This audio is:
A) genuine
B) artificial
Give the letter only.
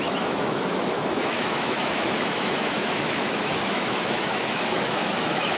B